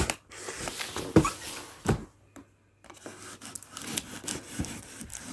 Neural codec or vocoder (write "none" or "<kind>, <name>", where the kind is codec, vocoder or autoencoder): none